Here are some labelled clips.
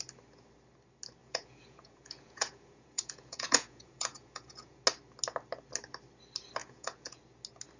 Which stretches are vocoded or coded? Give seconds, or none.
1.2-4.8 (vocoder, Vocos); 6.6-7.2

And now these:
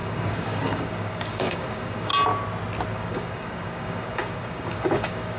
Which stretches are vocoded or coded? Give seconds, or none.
0.0-2.1 (codec, DAC); 2.9-5.4

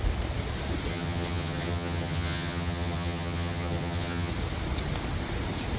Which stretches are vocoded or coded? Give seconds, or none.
0.9-4.3 (vocoder, HiFi-GAN)

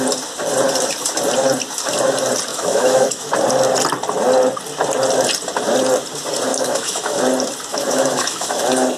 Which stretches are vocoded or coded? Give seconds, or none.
2.5-3.3 (autoencoder, DAC-VAE); 6.5-7.2; 7.7-8.6